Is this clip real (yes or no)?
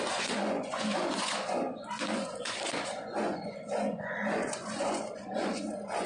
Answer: no